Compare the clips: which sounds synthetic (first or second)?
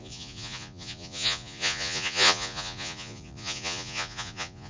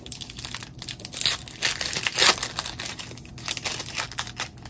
first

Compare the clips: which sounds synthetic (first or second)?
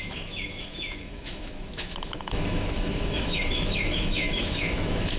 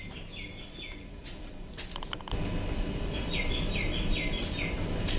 first